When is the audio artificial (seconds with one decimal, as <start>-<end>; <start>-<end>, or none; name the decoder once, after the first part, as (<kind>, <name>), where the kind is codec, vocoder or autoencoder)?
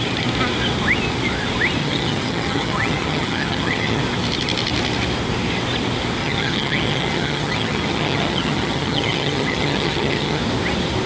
1.8-4.0 (vocoder, HiFi-GAN); 6.2-10.4